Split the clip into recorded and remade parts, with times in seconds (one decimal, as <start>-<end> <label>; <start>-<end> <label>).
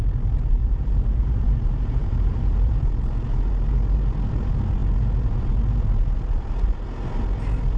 0.0-0.6 recorded; 0.6-2.7 remade; 2.7-7.8 recorded